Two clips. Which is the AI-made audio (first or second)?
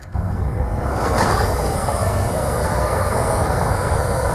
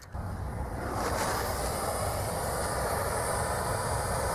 first